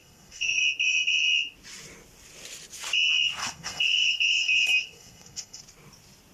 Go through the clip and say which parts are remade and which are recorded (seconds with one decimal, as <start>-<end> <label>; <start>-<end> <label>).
0.0-0.6 remade; 0.6-3.4 recorded; 3.4-5.6 remade; 5.6-6.3 recorded